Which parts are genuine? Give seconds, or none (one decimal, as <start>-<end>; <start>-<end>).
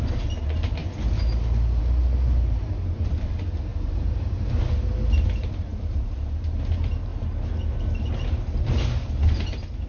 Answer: 0.0-3.7; 4.3-5.7; 6.6-9.9